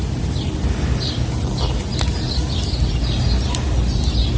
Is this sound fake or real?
real